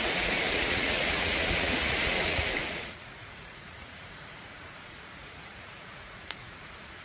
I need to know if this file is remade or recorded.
remade